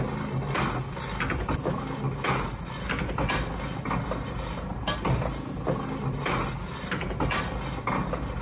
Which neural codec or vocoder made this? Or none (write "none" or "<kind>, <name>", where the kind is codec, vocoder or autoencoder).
none